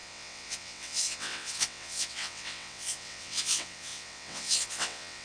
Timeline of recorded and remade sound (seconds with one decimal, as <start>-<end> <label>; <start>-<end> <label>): 0.0-5.2 remade